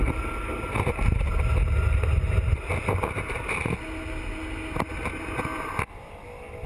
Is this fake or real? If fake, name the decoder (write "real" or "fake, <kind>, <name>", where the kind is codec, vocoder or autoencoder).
real